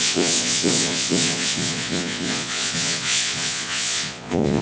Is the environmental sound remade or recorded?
remade